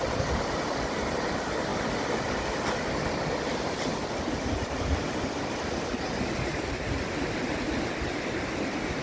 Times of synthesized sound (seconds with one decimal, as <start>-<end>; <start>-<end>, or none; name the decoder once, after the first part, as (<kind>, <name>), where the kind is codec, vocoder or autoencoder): none